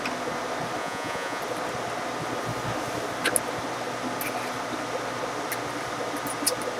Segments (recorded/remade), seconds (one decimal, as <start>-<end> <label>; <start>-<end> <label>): 0.0-0.8 recorded; 0.8-1.4 remade; 1.4-6.8 recorded